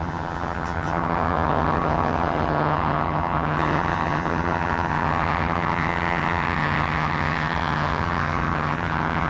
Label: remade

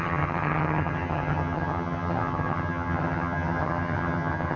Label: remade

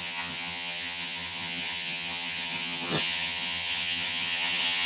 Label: remade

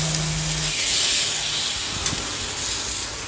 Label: recorded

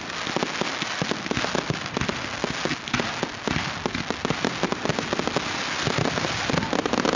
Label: recorded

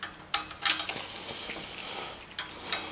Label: recorded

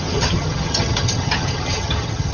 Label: remade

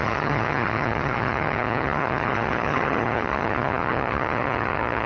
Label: remade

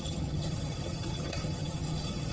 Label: remade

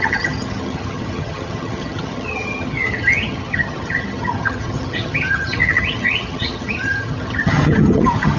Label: remade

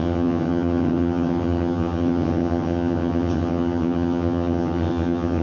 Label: remade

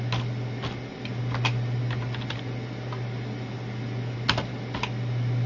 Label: recorded